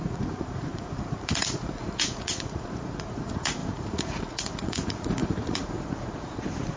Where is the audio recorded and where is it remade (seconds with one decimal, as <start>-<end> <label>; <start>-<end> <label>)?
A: 0.0-6.8 remade